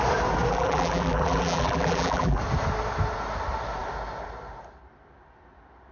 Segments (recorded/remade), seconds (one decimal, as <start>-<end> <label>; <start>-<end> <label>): 0.0-0.5 recorded; 0.5-2.4 remade; 2.4-5.9 recorded